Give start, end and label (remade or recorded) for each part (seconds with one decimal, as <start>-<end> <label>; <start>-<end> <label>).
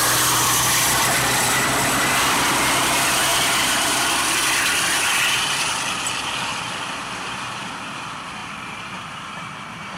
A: 0.0-10.0 remade